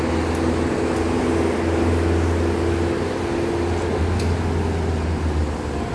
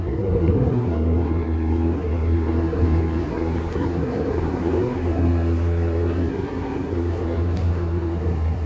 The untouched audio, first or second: first